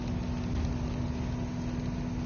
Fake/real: real